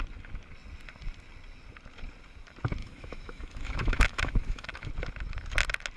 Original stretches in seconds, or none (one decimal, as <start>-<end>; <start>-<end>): 0.0-2.8; 4.9-6.0